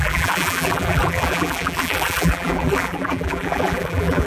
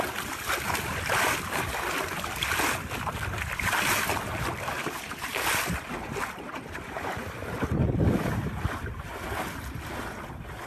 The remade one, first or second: first